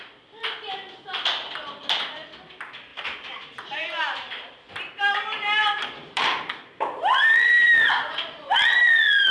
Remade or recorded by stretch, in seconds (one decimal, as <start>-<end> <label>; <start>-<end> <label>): 0.0-2.9 recorded; 2.9-7.9 remade; 7.9-9.3 recorded